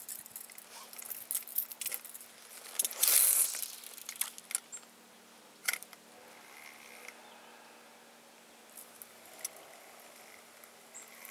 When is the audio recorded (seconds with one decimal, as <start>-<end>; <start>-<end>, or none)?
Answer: 0.0-11.3